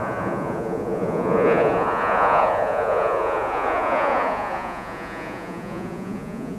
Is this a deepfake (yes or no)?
yes